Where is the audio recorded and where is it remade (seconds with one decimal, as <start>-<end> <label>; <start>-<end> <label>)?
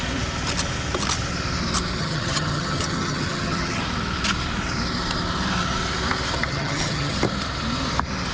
0.0-2.0 recorded; 2.0-3.8 remade; 3.8-6.5 recorded; 6.5-7.2 remade; 7.2-8.3 recorded